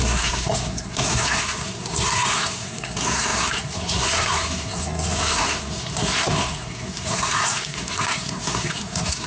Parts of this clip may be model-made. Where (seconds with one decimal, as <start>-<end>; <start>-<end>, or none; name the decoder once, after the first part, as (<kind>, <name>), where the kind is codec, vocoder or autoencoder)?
0.0-9.3 (codec, SNAC)